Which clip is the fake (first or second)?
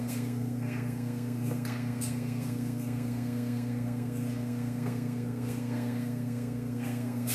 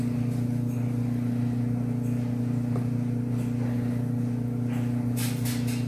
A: first